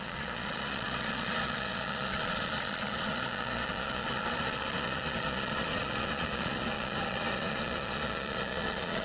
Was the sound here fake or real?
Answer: fake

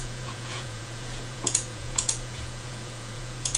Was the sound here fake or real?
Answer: fake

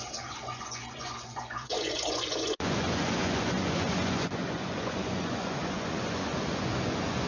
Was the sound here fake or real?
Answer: fake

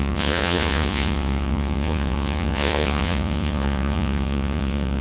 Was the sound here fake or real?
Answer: fake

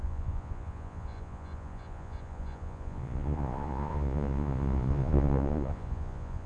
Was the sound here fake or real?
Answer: fake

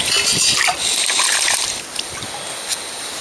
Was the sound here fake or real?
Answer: real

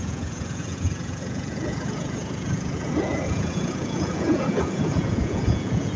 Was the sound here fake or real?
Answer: fake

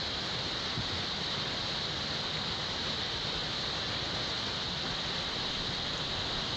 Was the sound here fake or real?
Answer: real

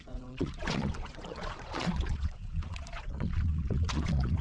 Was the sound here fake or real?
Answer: fake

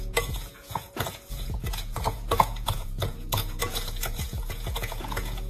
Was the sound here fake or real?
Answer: fake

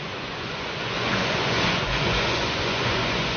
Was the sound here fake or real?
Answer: fake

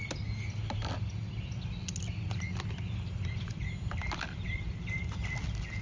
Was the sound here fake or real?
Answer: real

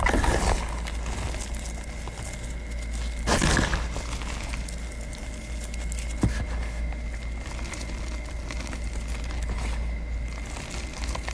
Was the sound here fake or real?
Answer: real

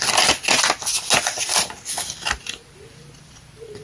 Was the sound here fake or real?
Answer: real